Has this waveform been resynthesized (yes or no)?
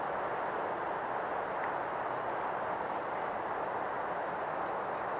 no